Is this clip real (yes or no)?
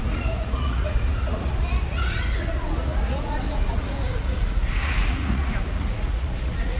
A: no